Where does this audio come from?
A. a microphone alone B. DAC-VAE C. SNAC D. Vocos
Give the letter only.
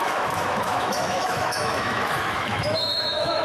B